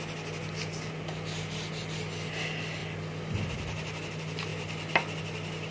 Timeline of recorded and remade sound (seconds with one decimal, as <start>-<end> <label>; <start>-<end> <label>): 0.0-5.7 recorded